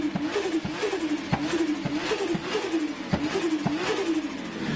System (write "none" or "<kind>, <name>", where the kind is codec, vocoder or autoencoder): none